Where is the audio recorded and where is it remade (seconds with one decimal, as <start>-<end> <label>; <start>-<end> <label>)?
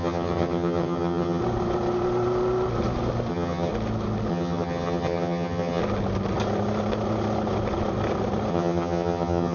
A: 0.0-1.4 remade; 1.4-3.3 recorded; 3.3-3.7 remade; 3.7-4.3 recorded; 4.3-5.8 remade; 5.8-8.5 recorded; 8.5-9.5 remade